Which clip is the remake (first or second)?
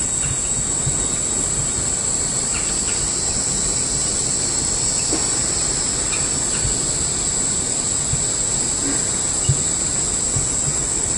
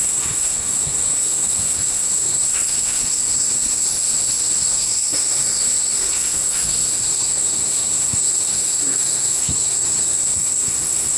second